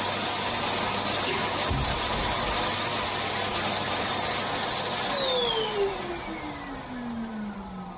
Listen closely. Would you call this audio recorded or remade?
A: recorded